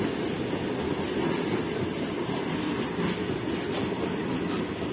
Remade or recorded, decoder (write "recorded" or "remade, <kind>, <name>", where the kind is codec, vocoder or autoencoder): recorded